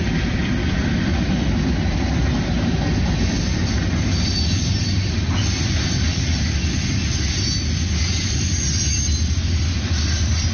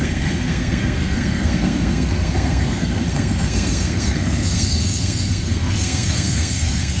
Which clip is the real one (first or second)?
first